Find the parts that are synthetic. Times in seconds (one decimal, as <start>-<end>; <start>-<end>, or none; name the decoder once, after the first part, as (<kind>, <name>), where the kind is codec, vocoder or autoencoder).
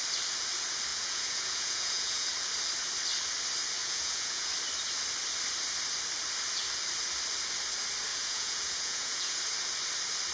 0.9-2.3 (vocoder, Vocos); 3.8-4.5; 8.1-9.4